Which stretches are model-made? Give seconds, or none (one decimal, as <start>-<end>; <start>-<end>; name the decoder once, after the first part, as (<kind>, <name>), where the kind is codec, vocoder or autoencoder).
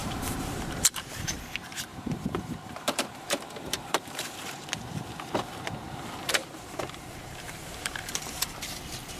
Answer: 0.0-1.4 (vocoder, BigVGAN v2); 1.9-4.7; 5.8-8.7